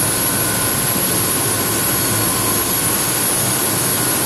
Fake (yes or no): no